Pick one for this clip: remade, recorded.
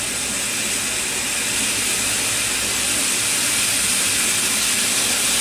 recorded